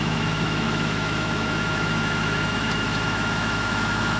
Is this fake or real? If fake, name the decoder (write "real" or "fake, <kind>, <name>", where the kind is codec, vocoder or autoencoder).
fake, autoencoder, DAC-VAE